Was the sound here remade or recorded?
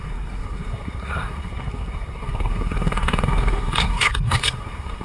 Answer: remade